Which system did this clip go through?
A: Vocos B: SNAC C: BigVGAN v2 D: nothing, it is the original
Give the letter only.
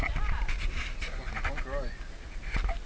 D